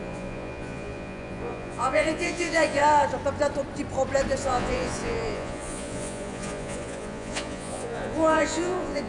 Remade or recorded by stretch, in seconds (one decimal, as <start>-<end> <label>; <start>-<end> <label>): 0.0-2.8 remade; 2.8-4.4 recorded; 4.4-9.1 remade